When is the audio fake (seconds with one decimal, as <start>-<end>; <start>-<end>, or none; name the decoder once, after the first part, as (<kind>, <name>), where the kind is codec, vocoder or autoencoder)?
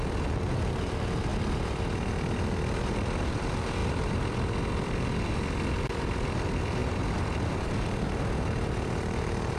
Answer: 1.3-1.8 (vocoder, BigVGAN v2); 3.8-5.3; 6.8-7.6